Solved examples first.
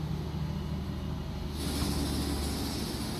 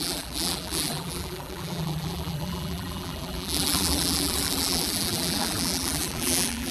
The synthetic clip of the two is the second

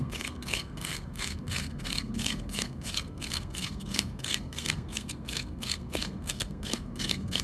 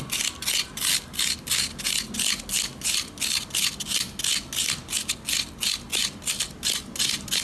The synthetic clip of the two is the first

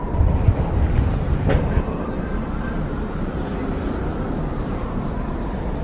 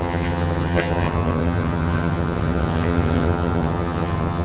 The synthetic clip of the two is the second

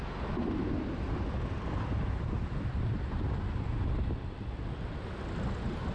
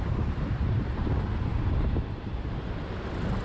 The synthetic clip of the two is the second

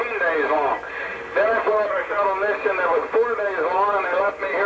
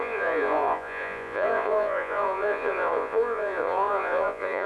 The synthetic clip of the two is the second